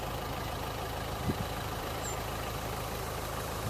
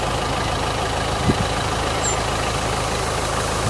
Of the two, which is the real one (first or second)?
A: second